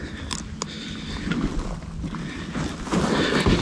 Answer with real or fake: real